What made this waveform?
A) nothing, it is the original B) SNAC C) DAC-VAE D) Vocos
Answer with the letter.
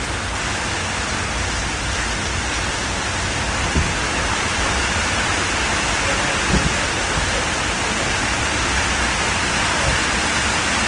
A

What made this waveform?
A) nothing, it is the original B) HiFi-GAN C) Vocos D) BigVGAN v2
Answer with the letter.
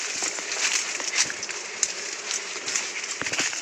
A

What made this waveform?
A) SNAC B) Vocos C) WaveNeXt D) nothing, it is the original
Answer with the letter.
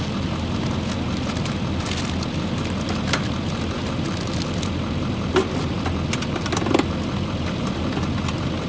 D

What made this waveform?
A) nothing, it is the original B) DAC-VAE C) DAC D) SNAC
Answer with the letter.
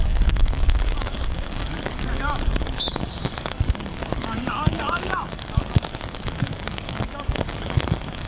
C